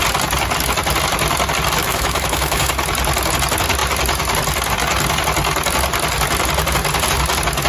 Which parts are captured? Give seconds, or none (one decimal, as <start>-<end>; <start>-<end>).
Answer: 0.0-1.8; 2.7-7.7